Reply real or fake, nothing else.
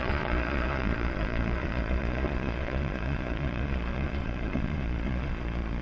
fake